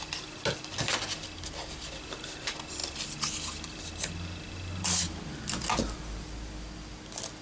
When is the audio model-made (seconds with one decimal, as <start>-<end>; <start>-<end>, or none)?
none